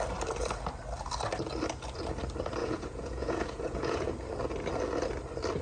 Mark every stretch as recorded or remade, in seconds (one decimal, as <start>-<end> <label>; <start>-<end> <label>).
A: 0.0-2.6 recorded; 2.6-4.1 remade; 4.1-5.6 recorded